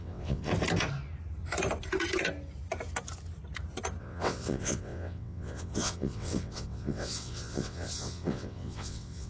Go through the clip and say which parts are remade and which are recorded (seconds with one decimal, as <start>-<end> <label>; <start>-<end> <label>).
0.0-0.5 remade; 0.5-4.0 recorded; 4.0-9.3 remade